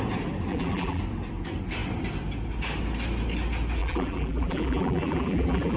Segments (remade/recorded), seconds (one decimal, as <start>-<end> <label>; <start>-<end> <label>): 0.0-0.5 recorded; 0.5-1.0 remade; 1.0-3.8 recorded; 3.8-5.8 remade